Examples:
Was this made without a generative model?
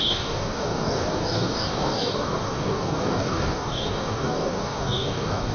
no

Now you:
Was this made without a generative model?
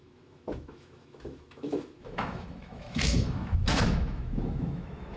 no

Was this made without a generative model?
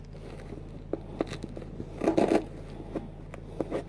yes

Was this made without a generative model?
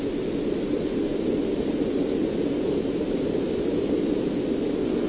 yes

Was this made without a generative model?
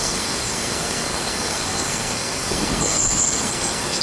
no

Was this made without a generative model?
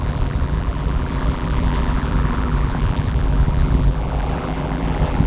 no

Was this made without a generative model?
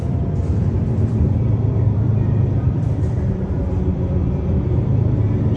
no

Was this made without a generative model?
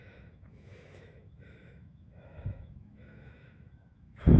no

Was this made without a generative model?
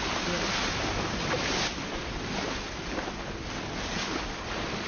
no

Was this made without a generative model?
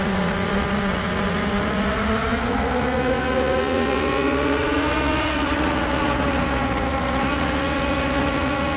no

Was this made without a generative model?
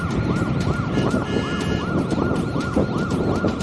yes